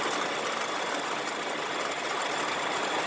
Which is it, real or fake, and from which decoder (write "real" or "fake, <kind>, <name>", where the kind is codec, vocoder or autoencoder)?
real